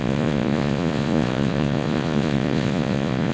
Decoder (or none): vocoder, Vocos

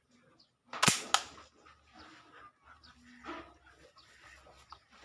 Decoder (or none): none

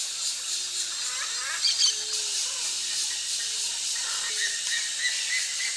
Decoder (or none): none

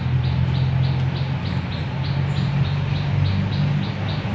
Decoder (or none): none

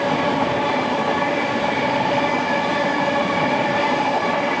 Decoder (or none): none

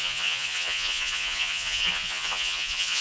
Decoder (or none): vocoder, Vocos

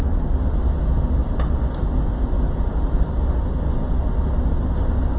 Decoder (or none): none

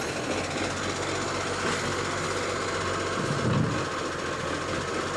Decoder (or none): none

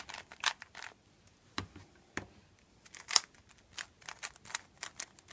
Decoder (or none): none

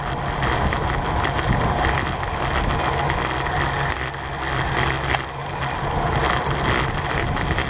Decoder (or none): none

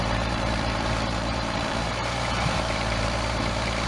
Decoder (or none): vocoder, BigVGAN v2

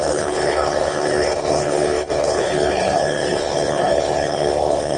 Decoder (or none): codec, HILCodec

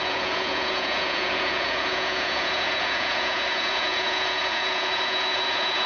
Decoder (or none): vocoder, Vocos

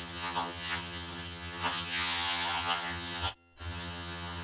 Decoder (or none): vocoder, HiFi-GAN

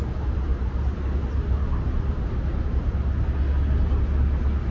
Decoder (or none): none